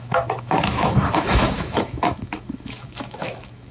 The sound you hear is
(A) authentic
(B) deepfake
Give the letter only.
B